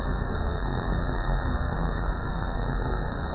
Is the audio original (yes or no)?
no